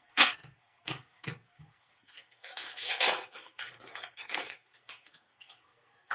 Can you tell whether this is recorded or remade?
remade